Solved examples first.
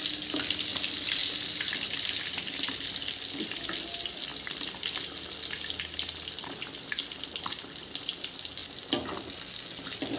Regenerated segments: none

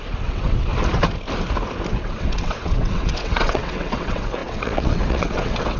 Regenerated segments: 0.0-0.7; 1.9-5.8

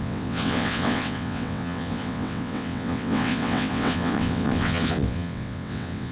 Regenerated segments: 0.0-6.1

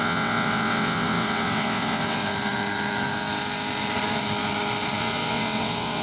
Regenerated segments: 0.0-2.2; 5.0-6.0

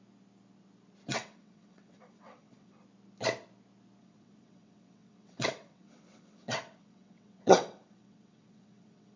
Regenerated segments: 1.1-2.8; 4.0-9.2

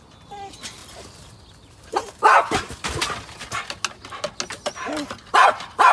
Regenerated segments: none

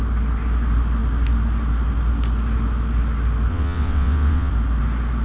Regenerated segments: 3.5-4.5